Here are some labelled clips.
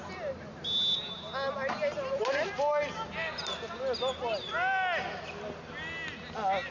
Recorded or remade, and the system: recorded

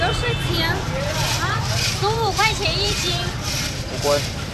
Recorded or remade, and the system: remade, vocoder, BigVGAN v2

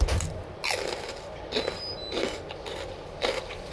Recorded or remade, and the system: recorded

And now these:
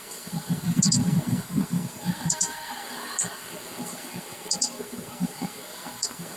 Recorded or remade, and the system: remade, codec, SNAC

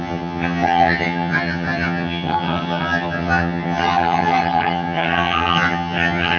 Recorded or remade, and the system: remade, vocoder, HiFi-GAN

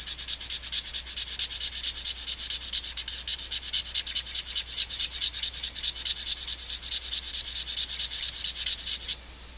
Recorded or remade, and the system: recorded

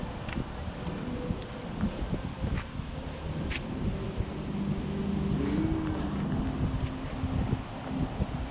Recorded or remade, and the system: recorded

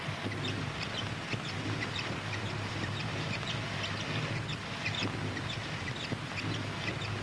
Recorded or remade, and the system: remade, vocoder, BigVGAN v2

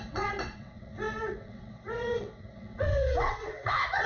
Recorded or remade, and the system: remade, vocoder, WaveNeXt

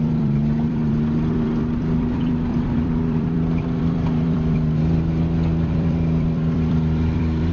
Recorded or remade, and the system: remade, vocoder, BigVGAN v2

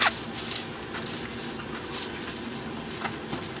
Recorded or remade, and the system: recorded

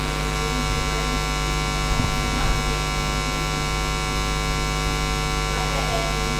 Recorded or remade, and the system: recorded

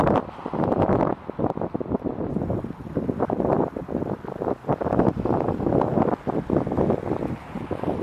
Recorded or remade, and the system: recorded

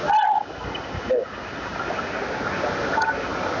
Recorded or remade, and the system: recorded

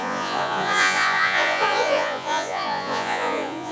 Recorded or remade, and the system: remade, vocoder, Vocos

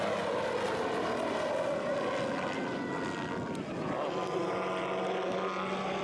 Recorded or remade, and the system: recorded